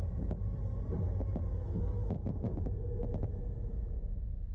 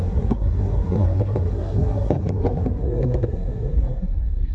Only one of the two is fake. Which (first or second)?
second